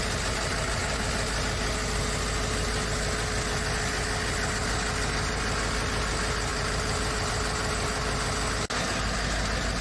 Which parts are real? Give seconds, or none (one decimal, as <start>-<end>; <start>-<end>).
0.0-9.8